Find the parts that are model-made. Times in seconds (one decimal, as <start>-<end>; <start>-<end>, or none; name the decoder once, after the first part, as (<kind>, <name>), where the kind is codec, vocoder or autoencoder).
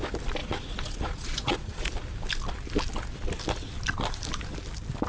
0.4-1.9 (vocoder, Vocos)